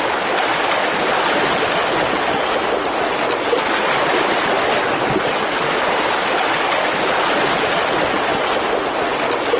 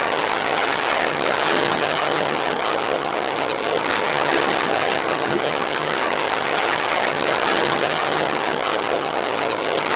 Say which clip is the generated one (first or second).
second